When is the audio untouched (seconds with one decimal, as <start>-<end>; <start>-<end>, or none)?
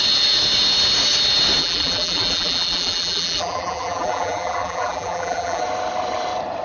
0.0-1.6; 5.6-6.6